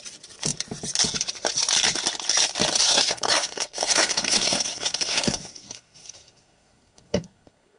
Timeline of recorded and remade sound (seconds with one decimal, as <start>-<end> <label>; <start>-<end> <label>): 0.0-2.8 recorded; 2.8-7.8 remade